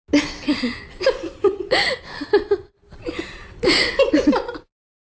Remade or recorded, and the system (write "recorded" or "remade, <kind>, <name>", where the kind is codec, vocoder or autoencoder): recorded